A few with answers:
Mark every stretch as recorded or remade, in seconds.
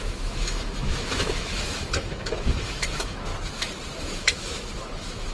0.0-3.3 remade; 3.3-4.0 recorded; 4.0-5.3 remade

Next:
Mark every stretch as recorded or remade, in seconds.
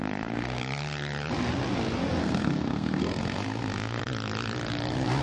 0.0-0.6 remade; 0.6-2.2 recorded; 2.2-4.0 remade; 4.0-5.2 recorded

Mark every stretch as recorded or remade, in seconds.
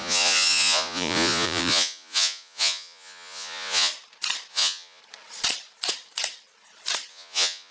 0.0-3.9 remade; 3.9-4.5 recorded; 4.5-5.0 remade; 5.0-7.1 recorded; 7.1-7.7 remade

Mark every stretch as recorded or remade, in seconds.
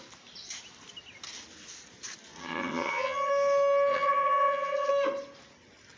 0.0-2.4 recorded; 2.4-3.3 remade; 3.3-3.9 recorded; 3.9-4.9 remade; 4.9-6.0 recorded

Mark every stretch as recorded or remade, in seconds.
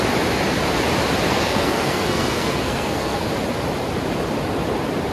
0.0-1.3 recorded; 1.3-3.3 remade; 3.3-5.1 recorded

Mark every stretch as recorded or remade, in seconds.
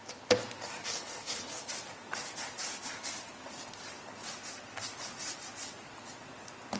0.0-0.8 recorded; 0.8-1.7 remade; 1.7-6.8 recorded